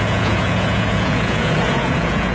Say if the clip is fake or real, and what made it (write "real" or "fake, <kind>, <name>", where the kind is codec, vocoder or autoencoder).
fake, vocoder, Vocos